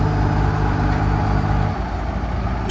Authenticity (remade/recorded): recorded